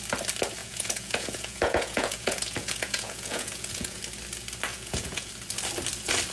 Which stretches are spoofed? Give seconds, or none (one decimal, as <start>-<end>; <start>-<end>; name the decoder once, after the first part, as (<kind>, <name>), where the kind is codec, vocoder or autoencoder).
0.6-4.0 (vocoder, Vocos); 4.7-5.3